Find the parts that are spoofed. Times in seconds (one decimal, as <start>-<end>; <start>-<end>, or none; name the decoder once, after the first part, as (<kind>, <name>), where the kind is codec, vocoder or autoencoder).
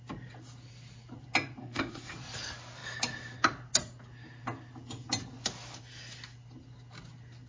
1.6-2.1 (codec, SNAC)